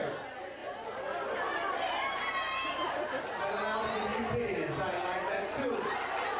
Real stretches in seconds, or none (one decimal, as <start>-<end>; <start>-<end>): 0.0-6.4